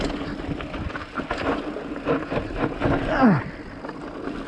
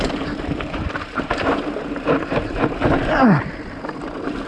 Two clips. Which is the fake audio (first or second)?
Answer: second